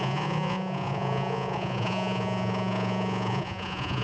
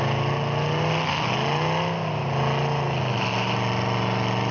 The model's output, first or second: first